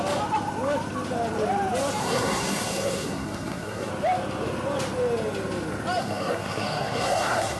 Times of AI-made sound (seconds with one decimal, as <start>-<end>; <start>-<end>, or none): 2.0-3.9; 6.0-7.6